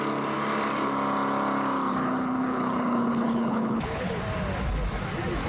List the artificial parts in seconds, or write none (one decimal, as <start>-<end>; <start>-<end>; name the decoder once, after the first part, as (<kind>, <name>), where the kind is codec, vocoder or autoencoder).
1.9-4.2 (codec, HILCodec)